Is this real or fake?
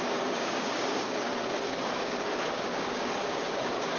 fake